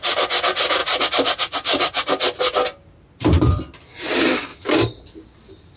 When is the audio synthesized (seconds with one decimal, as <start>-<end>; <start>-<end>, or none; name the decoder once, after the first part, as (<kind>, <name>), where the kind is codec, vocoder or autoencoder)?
4.5-5.1 (vocoder, BigVGAN v2)